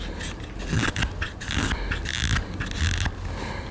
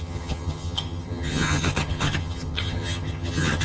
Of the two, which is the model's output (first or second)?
second